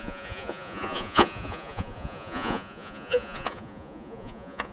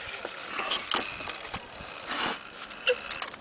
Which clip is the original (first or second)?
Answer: second